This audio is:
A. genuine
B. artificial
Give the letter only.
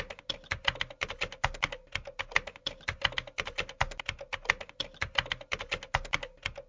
A